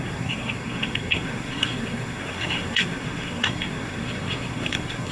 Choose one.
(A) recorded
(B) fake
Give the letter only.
B